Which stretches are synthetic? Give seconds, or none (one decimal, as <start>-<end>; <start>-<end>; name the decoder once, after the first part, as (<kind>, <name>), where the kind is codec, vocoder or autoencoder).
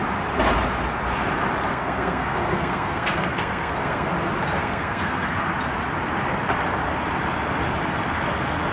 1.7-4.1 (codec, SNAC); 4.6-5.5